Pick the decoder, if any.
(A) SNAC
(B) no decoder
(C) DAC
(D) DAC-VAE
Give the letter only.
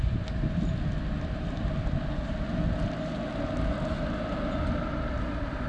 B